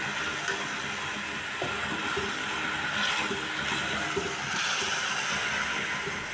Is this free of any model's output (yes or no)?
yes